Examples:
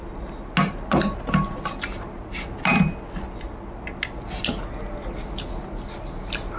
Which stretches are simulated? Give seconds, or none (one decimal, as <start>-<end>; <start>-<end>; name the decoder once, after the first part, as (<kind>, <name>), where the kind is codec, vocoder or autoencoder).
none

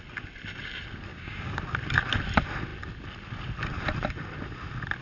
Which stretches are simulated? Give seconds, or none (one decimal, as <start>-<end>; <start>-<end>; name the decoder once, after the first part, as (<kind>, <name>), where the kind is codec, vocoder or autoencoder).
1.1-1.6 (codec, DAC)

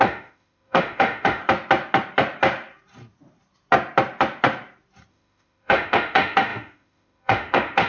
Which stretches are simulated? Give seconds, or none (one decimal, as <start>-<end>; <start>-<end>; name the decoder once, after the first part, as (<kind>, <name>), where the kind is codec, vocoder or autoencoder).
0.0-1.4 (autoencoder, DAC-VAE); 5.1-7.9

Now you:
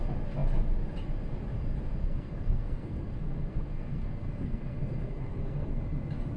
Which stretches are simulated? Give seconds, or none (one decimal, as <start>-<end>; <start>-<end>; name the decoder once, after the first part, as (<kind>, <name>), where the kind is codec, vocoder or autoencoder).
2.0-5.8 (codec, SNAC)

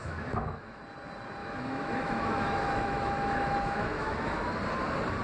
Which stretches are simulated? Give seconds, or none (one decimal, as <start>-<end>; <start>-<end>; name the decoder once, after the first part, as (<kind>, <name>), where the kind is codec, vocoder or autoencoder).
0.0-0.8 (autoencoder, DAC-VAE); 1.4-4.5

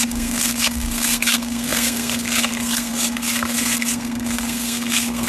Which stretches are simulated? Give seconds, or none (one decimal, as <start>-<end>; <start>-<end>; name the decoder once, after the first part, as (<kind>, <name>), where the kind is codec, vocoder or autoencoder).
0.0-5.3 (codec, SNAC)

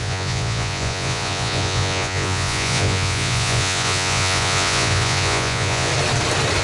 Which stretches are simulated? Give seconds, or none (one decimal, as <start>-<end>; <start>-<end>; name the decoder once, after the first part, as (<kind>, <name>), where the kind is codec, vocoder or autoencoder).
0.0-5.9 (vocoder, Vocos)

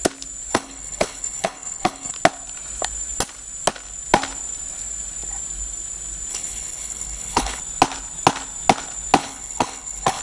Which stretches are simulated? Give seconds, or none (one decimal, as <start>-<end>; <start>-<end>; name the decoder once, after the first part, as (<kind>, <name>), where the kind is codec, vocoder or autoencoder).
0.5-2.1 (codec, HILCodec); 6.3-7.6; 9.2-10.2